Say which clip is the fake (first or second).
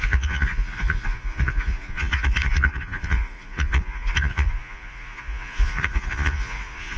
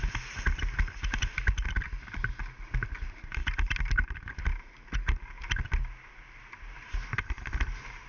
first